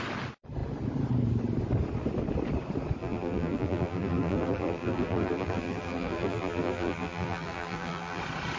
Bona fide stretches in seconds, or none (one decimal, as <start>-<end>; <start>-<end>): 0.0-3.0; 8.2-8.6